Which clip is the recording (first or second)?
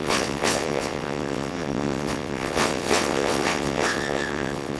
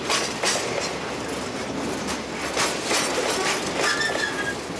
second